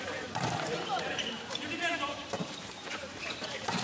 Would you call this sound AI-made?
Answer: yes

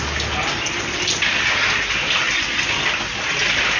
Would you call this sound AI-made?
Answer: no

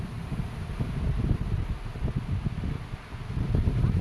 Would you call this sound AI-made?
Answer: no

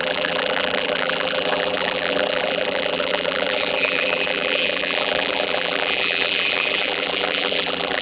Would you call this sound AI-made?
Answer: yes